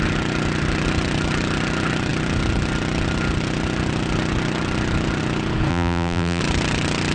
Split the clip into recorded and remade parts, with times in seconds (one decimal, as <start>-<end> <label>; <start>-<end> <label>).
0.0-5.7 recorded; 5.7-6.4 remade; 6.4-7.1 recorded